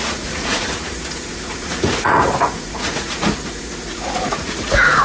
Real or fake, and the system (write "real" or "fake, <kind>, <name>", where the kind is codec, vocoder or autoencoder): fake, vocoder, Vocos